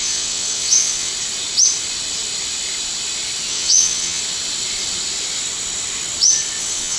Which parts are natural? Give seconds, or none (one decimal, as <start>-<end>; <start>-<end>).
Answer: 1.1-3.5; 4.2-6.6